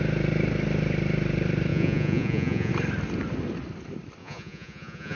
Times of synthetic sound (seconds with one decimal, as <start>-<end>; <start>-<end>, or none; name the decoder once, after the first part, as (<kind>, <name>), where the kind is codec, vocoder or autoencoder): 1.7-2.7 (vocoder, Vocos); 4.2-5.2